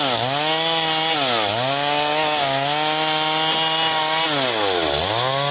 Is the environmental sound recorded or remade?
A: recorded